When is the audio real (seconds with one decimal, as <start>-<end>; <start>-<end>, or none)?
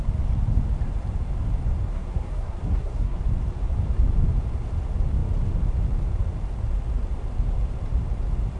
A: 0.0-1.9; 3.2-8.6